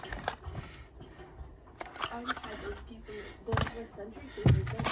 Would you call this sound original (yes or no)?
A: yes